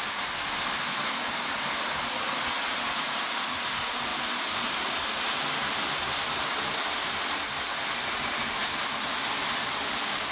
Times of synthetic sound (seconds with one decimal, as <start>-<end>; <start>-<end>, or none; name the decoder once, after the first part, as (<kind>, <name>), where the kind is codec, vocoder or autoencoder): none